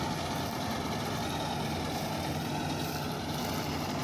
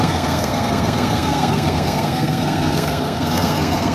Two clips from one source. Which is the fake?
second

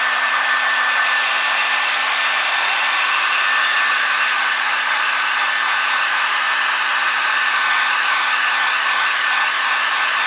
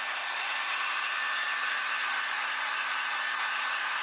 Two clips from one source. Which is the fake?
first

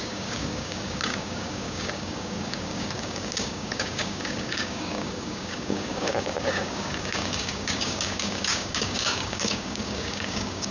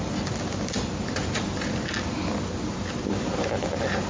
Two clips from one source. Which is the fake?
first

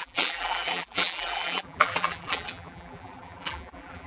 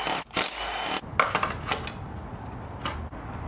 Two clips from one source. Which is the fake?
first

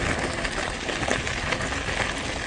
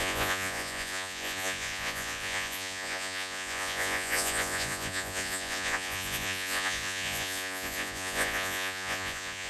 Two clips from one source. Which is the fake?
second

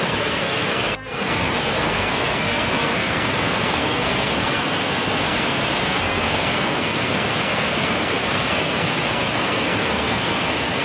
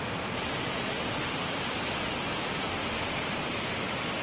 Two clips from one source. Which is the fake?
first